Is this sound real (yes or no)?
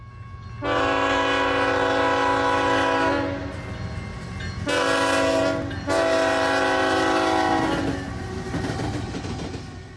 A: yes